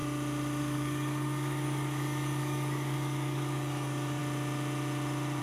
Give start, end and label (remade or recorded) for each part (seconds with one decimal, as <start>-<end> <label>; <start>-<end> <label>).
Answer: 0.0-0.6 recorded; 0.6-4.2 remade; 4.2-5.4 recorded